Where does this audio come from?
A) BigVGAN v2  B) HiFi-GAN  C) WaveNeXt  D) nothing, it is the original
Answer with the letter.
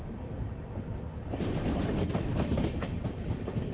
D